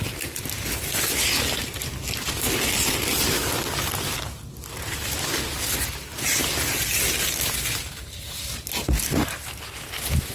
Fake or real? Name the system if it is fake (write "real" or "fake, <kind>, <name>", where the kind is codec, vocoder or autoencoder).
real